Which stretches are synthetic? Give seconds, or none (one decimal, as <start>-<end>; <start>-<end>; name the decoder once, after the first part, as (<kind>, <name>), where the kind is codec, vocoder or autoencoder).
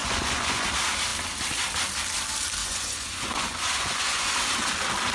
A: 0.0-0.7 (vocoder, Vocos); 2.6-4.3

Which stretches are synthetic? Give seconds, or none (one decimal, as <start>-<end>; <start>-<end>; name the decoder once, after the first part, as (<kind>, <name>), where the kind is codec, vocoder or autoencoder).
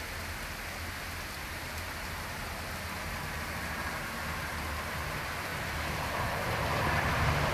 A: 5.5-7.1 (vocoder, BigVGAN v2)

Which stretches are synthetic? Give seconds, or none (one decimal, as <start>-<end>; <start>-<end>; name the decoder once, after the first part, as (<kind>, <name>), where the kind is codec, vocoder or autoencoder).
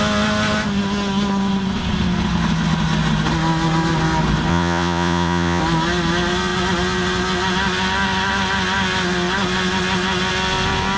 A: 4.5-5.6 (vocoder, Vocos)